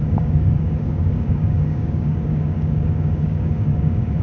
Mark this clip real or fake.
fake